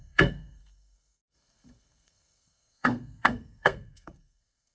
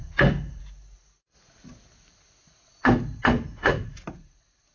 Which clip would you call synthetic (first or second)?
first